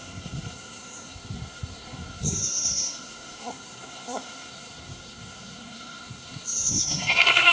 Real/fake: fake